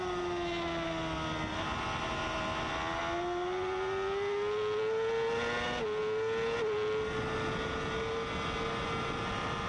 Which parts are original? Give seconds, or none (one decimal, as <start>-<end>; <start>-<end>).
0.0-9.7